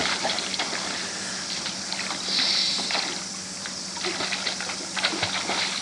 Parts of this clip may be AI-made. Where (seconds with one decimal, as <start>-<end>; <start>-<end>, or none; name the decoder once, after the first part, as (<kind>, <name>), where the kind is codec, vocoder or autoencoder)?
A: none